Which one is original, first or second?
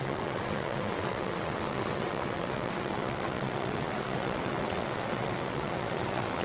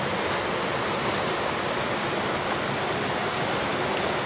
second